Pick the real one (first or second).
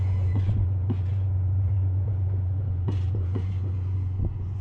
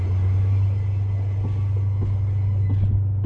second